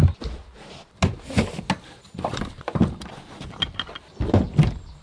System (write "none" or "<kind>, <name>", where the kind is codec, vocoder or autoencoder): none